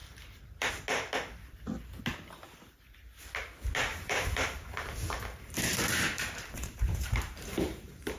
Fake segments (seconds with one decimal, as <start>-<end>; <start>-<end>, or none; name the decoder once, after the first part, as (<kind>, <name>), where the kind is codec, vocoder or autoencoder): 0.0-0.7 (vocoder, BigVGAN v2); 3.9-8.2